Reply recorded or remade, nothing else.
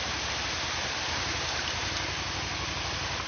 recorded